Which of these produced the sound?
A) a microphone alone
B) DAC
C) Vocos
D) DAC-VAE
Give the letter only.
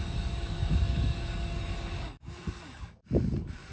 B